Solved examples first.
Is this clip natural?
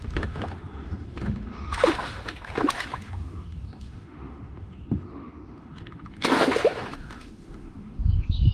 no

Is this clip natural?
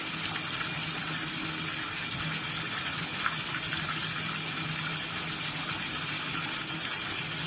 yes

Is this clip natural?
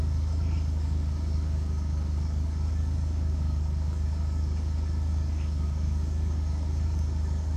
no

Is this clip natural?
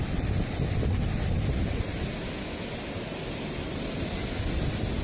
yes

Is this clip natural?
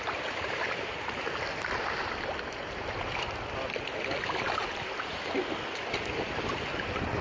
yes